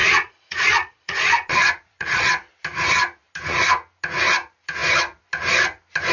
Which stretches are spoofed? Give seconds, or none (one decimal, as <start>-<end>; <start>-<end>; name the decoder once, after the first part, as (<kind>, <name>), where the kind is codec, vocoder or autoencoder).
0.0-2.3 (vocoder, Vocos)